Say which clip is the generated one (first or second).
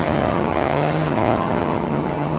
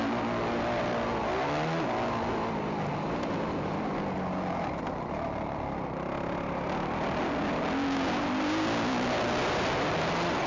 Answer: first